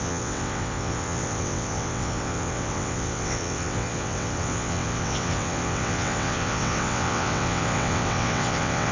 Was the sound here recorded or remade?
remade